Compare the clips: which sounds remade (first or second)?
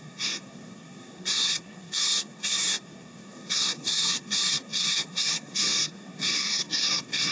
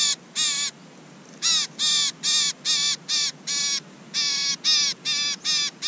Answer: first